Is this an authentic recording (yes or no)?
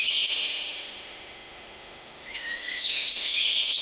no